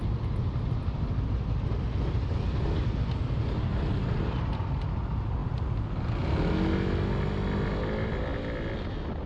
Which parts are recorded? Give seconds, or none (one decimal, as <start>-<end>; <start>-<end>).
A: 0.0-9.3